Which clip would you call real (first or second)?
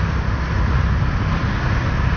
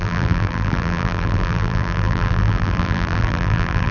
first